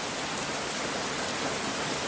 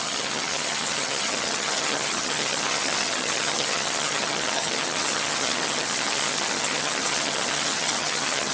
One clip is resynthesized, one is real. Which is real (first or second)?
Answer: first